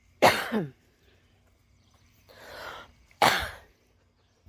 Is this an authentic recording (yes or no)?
no